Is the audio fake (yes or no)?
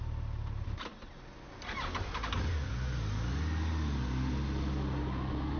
no